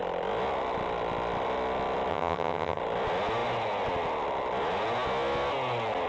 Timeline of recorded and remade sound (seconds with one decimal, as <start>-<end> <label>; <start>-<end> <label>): 0.0-2.1 recorded; 2.1-2.8 remade; 2.8-6.1 recorded